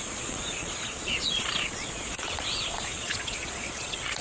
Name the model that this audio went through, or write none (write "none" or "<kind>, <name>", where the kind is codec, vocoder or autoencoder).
vocoder, Vocos